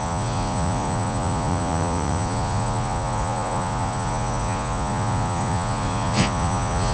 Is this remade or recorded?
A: remade